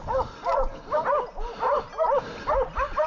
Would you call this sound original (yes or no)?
yes